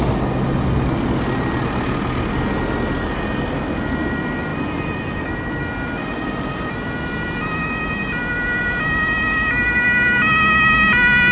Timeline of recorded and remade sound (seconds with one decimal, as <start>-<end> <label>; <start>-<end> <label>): 0.0-11.3 recorded